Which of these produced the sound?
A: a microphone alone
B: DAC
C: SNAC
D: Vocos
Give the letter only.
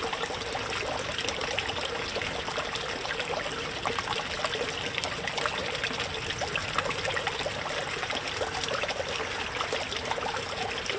A